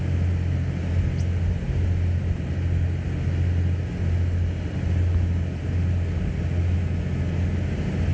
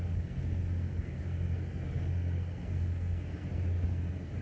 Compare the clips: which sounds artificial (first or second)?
second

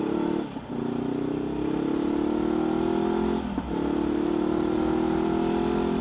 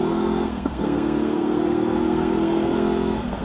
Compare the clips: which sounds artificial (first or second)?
second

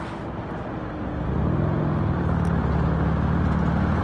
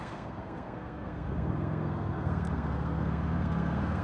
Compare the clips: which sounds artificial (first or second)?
second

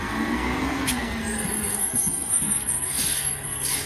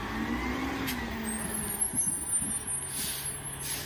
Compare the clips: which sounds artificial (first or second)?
first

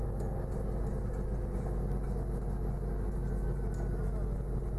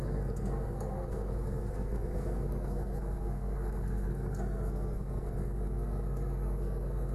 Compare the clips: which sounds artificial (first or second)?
second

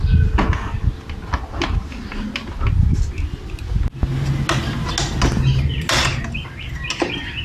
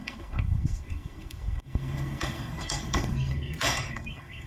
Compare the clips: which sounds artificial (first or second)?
second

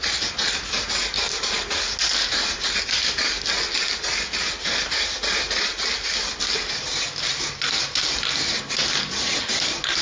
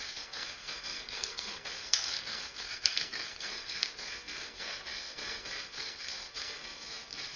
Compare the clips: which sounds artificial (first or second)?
second